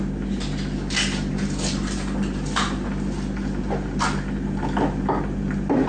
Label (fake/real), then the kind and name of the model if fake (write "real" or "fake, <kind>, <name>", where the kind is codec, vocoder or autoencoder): real